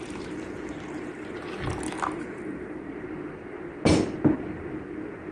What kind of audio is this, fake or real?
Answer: real